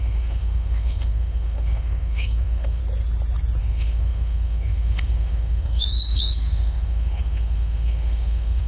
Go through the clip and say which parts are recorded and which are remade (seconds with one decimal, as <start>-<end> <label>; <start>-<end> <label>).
0.0-2.8 remade; 2.8-3.6 recorded; 3.6-8.7 remade